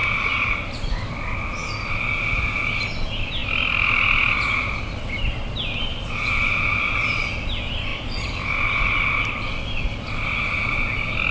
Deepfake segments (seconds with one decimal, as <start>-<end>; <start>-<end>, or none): 0.0-0.9; 3.4-5.8; 7.9-10.7